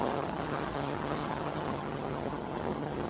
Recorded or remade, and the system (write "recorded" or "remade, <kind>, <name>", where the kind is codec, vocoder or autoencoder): remade, vocoder, HiFi-GAN